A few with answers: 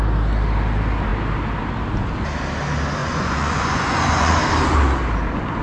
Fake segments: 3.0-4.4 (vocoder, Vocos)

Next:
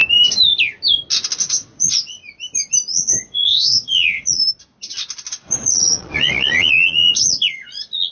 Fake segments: 1.5-2.2 (vocoder, Vocos); 2.9-4.4; 5.3-8.1

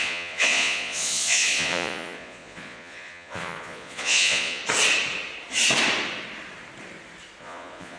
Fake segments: 0.0-4.6 (vocoder, Vocos); 7.4-8.0

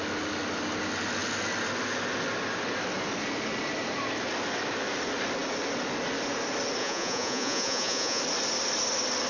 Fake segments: 6.8-8.2 (vocoder, Vocos)

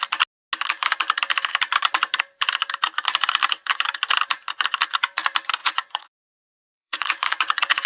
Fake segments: 5.6-7.9 (vocoder, Vocos)